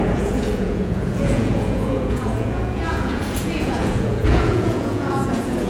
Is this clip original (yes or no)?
no